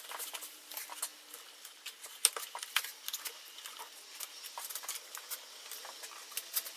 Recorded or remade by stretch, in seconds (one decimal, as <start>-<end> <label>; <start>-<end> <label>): 0.0-6.8 recorded